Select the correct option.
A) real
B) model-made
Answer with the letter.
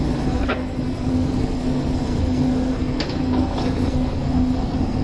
B